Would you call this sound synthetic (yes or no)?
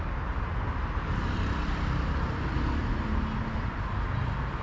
no